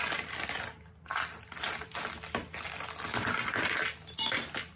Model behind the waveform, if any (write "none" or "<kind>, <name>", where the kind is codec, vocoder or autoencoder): none